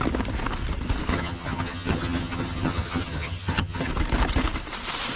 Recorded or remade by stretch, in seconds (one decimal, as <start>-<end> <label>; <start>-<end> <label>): 0.0-1.1 recorded; 1.1-3.9 remade; 3.9-5.2 recorded